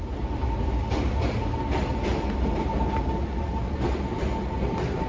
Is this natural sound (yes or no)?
yes